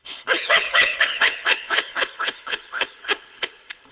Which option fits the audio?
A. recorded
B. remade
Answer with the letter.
B